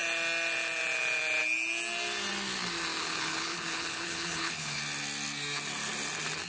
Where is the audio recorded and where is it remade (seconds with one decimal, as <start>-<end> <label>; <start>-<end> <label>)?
0.0-3.0 recorded; 3.0-4.8 remade; 4.8-6.5 recorded